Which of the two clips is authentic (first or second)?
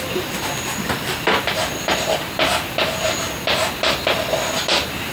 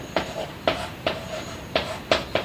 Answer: first